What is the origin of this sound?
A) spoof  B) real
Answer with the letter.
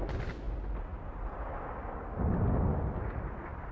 B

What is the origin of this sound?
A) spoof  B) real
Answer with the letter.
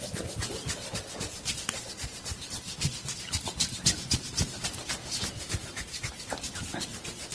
B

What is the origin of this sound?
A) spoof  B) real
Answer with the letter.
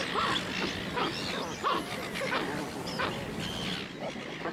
B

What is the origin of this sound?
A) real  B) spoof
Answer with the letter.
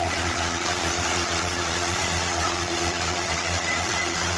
B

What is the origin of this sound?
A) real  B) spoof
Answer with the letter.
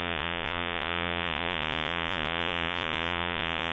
B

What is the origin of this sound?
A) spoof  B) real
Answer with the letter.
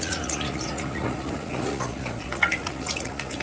A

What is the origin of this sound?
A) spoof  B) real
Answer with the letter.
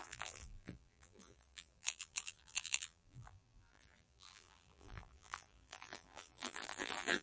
A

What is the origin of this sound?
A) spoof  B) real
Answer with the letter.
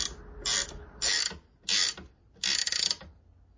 B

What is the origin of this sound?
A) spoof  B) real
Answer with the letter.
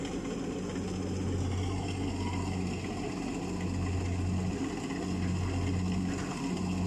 B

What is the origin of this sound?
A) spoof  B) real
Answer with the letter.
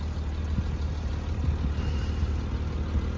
B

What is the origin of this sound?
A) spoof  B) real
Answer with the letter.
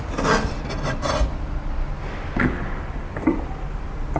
B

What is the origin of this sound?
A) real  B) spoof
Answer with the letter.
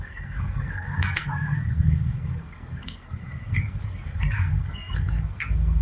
B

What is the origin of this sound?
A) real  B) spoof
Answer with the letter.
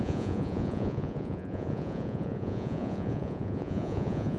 B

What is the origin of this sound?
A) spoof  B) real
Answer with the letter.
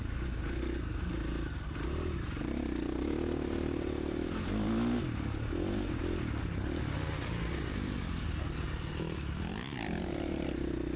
B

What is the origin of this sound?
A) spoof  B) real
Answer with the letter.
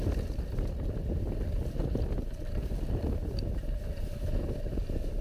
B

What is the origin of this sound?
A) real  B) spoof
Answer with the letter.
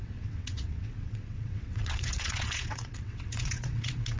B